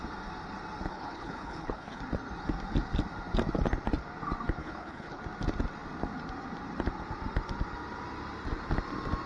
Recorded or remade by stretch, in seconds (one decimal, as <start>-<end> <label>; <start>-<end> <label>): 0.0-0.9 recorded; 0.9-2.0 remade; 2.0-4.6 recorded; 4.6-5.2 remade; 5.2-9.3 recorded